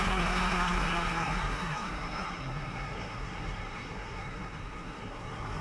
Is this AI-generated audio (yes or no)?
yes